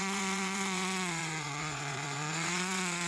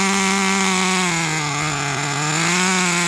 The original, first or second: second